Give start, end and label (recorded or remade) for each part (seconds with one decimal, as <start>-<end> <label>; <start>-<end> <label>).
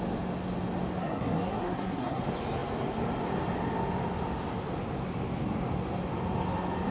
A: 0.0-1.0 recorded; 1.0-2.2 remade; 2.2-6.9 recorded